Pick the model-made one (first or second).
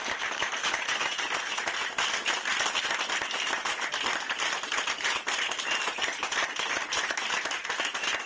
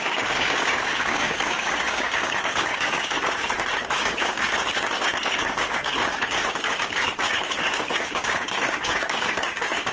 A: second